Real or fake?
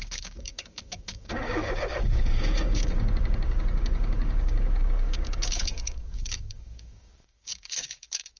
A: fake